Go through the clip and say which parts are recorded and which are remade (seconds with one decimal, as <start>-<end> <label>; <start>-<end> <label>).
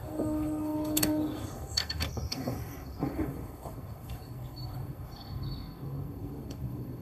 0.0-7.0 remade